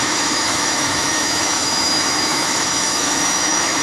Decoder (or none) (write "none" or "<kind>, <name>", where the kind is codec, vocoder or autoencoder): autoencoder, DAC-VAE